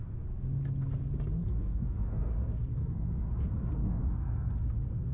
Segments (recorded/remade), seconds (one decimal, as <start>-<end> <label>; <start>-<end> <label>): 0.0-1.4 recorded; 1.4-2.3 remade; 2.3-2.7 recorded; 2.7-3.3 remade; 3.3-3.8 recorded; 3.8-4.5 remade; 4.5-5.1 recorded